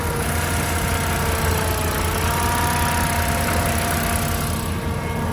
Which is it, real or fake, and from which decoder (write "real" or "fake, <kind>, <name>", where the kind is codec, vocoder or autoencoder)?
real